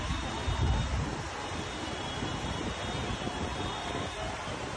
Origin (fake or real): real